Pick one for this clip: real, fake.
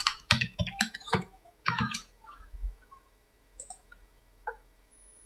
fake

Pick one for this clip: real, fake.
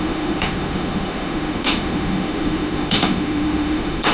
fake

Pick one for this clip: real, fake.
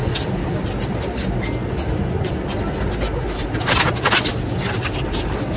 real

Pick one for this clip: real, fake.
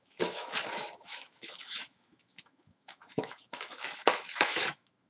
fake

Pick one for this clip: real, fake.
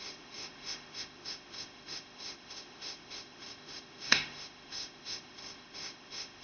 fake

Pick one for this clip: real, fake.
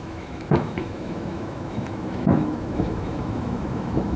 fake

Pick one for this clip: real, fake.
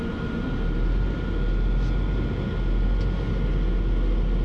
real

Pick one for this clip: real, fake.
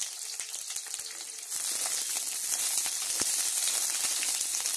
real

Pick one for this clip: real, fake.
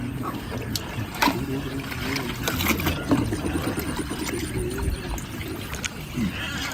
real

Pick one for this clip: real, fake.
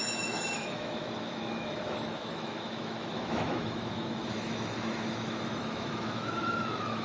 fake